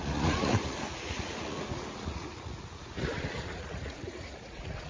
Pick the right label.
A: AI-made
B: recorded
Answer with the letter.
A